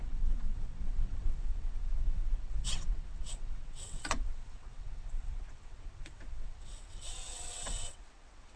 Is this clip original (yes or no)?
no